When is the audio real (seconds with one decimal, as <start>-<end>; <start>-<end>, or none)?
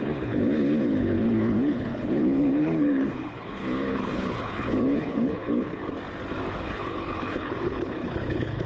5.8-6.5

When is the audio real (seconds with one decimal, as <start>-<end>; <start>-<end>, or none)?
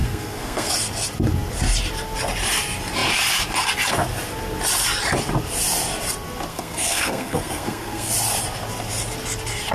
0.7-6.5; 8.1-9.7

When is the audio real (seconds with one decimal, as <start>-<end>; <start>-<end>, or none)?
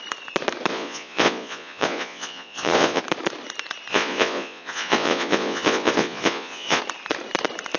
0.0-0.7; 3.0-3.9; 6.8-7.8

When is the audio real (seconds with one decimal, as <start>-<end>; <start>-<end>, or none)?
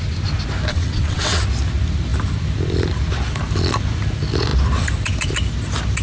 0.0-0.7; 1.4-6.0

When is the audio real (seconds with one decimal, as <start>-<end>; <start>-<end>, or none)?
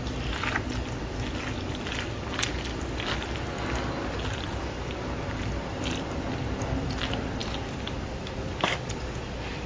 0.0-9.7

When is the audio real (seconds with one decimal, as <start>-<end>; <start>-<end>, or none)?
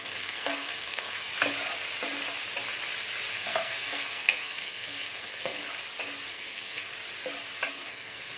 1.3-3.3; 5.6-6.3; 6.9-7.7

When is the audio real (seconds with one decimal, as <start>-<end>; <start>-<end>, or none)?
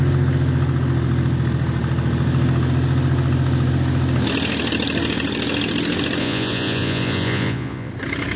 0.0-6.2; 7.9-8.4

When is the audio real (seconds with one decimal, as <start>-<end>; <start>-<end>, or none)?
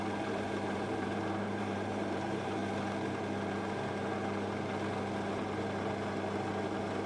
2.6-7.1